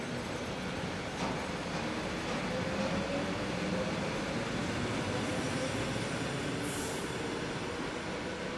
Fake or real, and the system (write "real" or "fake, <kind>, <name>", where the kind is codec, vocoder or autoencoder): real